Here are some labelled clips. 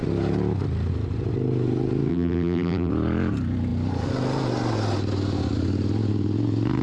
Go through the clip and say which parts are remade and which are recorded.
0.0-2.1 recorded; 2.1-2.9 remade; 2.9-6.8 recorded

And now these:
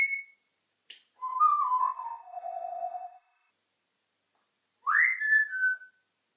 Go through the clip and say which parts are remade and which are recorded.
0.0-1.8 recorded; 1.8-3.5 remade; 3.5-6.4 recorded

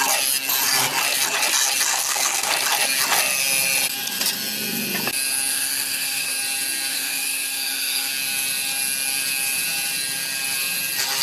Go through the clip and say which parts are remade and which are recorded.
0.0-1.9 recorded; 1.9-2.5 remade; 2.5-5.5 recorded; 5.5-6.3 remade; 6.3-6.9 recorded; 6.9-8.1 remade; 8.1-11.2 recorded

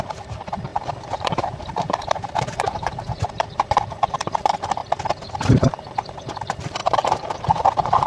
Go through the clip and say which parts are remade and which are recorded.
0.0-0.7 remade; 0.7-1.2 recorded; 1.2-4.8 remade; 4.8-5.3 recorded; 5.3-8.1 remade